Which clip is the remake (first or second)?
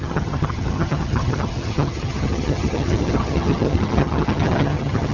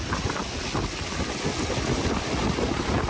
first